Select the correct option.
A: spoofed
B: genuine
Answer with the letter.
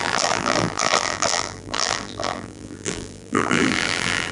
A